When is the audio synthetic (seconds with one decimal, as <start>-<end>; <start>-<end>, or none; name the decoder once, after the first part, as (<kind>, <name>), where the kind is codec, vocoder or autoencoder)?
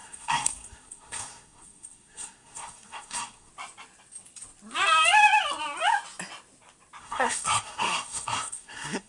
0.0-3.5 (codec, SNAC); 7.0-9.1